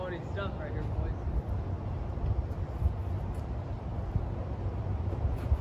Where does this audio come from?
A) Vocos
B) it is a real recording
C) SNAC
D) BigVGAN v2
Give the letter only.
B